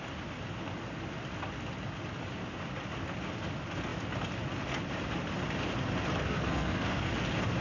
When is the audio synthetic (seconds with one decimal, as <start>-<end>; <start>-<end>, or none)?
6.2-7.1